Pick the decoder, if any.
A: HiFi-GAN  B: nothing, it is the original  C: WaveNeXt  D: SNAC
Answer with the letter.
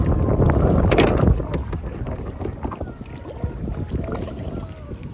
B